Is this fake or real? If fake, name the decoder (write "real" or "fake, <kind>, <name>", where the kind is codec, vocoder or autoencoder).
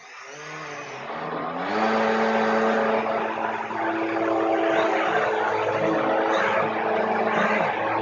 real